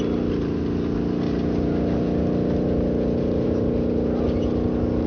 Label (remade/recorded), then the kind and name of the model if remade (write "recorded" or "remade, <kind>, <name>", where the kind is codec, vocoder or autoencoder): recorded